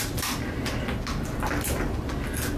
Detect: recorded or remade recorded